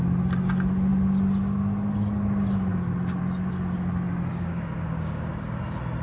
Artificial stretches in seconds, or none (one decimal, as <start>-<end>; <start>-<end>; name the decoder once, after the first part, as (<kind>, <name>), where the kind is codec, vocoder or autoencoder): 4.3-5.6 (codec, DAC)